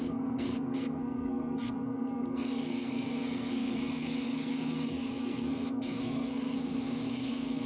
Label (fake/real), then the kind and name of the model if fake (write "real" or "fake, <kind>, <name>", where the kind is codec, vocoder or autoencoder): fake, codec, SNAC